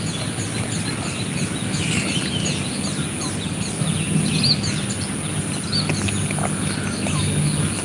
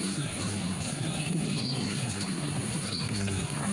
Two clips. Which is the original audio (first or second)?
first